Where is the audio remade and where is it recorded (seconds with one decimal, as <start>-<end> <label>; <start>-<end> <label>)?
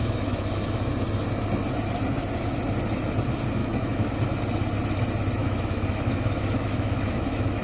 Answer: 0.0-0.9 remade; 0.9-3.6 recorded; 3.6-4.1 remade; 4.1-5.4 recorded; 5.4-7.6 remade